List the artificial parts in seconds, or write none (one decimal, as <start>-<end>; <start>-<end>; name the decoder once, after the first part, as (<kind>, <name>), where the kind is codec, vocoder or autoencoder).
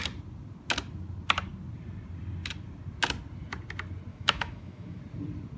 4.1-5.0 (autoencoder, DAC-VAE)